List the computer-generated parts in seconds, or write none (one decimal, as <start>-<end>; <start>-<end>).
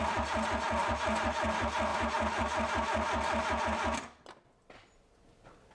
none